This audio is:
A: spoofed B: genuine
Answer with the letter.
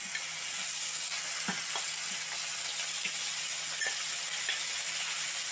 B